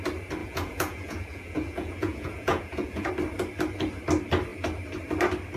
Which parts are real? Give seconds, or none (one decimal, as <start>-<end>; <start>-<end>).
0.0-0.4; 3.1-5.6